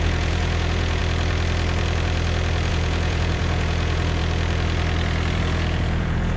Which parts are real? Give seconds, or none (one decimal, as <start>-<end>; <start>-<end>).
1.0-2.7; 4.2-5.4